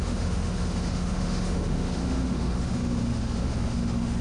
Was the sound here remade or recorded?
remade